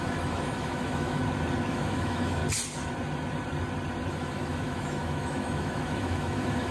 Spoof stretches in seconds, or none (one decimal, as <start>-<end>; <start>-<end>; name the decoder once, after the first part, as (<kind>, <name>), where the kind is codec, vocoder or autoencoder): 0.0-1.2 (autoencoder, DAC-VAE); 1.7-2.4; 4.1-6.7